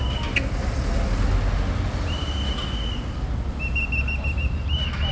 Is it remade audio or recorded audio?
recorded